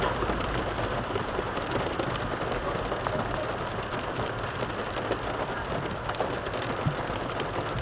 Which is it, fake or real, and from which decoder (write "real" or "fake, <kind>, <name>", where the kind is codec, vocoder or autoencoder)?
fake, vocoder, BigVGAN v2